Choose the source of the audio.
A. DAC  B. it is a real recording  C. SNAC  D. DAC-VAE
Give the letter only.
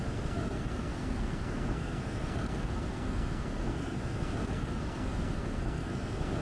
C